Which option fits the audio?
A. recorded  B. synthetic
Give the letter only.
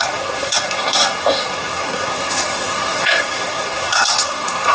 B